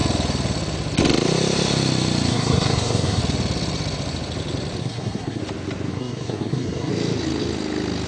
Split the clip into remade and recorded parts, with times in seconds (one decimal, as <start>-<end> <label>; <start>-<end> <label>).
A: 0.0-2.3 recorded; 2.3-3.2 remade; 3.2-4.8 recorded; 4.8-5.4 remade; 5.4-5.9 recorded; 5.9-6.9 remade; 6.9-8.1 recorded